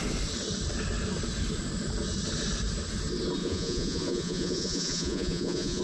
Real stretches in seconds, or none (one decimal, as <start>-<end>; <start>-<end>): 0.0-3.4